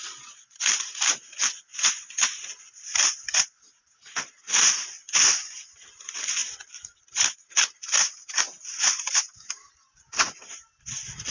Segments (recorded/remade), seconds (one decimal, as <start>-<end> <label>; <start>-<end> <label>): 0.0-11.3 recorded